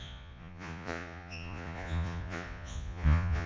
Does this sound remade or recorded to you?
remade